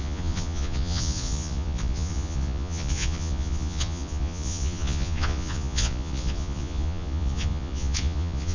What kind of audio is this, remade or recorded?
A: remade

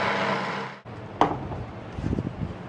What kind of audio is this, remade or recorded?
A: recorded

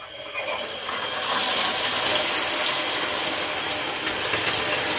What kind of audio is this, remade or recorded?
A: recorded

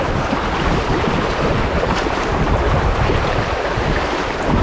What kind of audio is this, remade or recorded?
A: remade